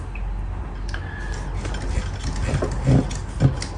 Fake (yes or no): no